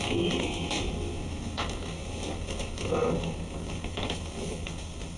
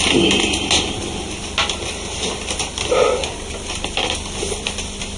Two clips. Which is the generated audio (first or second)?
first